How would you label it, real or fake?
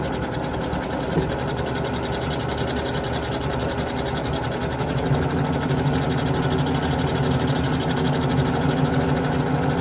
real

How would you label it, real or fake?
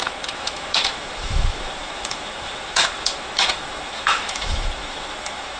fake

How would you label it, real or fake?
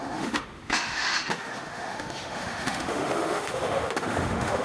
fake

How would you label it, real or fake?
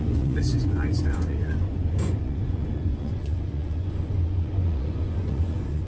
fake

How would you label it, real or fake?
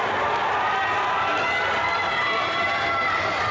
real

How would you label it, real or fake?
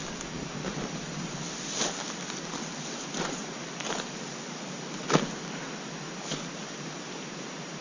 real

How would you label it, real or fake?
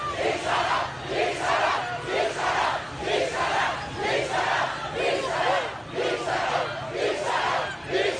real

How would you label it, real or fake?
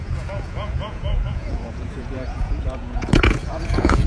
fake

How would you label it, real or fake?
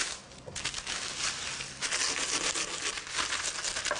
real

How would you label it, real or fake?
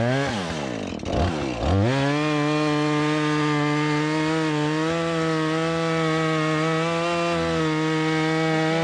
real